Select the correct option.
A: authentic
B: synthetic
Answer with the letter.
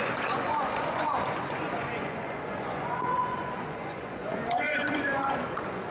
B